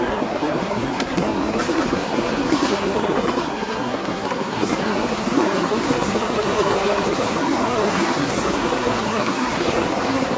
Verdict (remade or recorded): remade